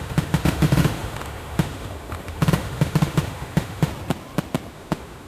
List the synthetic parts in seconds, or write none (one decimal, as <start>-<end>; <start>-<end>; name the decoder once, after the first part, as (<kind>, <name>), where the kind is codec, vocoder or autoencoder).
0.0-3.9 (autoencoder, DAC-VAE); 4.7-5.3